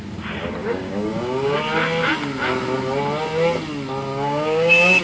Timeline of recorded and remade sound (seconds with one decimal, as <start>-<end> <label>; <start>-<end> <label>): 0.0-0.6 recorded; 0.6-1.6 remade; 1.6-4.1 recorded; 4.1-5.0 remade